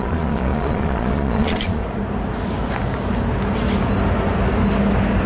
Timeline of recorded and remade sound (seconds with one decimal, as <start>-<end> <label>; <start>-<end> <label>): 0.0-1.8 remade; 1.8-5.3 recorded